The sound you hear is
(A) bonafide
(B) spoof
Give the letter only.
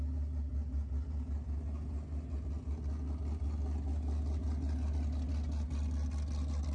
A